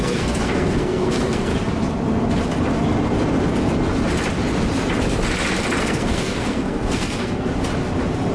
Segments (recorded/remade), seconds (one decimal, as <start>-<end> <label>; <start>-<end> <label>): 0.0-1.5 remade; 1.5-5.8 recorded; 5.8-7.5 remade; 7.5-8.3 recorded